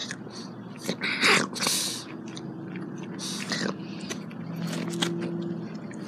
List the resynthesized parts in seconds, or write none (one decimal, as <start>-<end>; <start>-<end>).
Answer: none